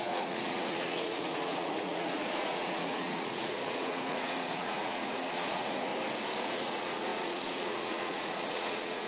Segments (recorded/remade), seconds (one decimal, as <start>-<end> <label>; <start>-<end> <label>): 0.0-5.9 remade; 5.9-6.4 recorded; 6.4-9.1 remade